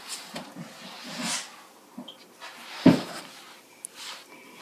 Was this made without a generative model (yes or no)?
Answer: yes